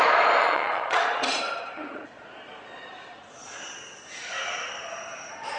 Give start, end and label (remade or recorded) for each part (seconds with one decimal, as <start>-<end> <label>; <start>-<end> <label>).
0.0-0.4 recorded; 0.4-3.7 remade; 3.7-5.6 recorded